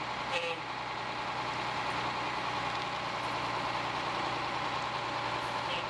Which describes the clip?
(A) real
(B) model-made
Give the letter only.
A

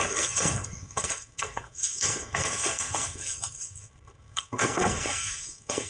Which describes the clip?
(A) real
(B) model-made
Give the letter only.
B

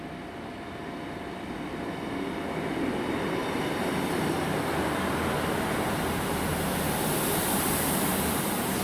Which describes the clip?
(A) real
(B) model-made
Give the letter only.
A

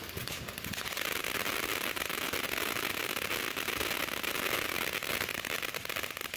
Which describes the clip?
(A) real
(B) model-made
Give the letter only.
A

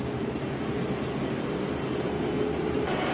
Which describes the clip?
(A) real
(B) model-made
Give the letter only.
A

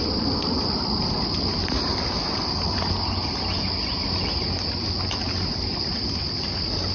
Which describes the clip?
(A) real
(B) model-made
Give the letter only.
A